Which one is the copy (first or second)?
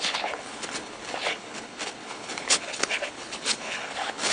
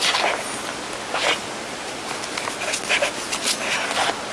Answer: first